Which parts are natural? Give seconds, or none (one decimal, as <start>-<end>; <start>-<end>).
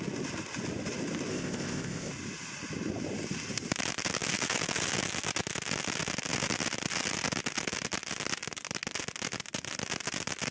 0.0-1.3; 2.1-10.5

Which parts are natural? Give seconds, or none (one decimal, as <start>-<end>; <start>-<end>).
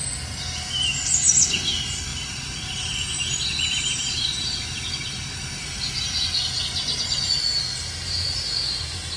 0.0-2.1; 2.9-4.0; 5.6-9.2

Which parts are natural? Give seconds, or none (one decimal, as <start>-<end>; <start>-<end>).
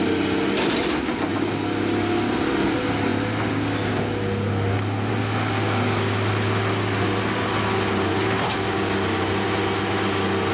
0.0-10.5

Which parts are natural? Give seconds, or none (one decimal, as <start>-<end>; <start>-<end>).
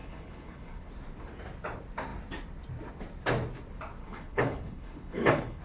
0.9-4.0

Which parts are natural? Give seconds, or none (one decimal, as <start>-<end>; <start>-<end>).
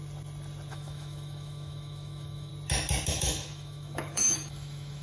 0.0-0.7; 2.5-3.1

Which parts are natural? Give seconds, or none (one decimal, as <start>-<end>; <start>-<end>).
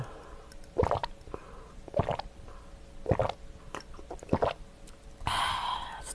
0.0-6.1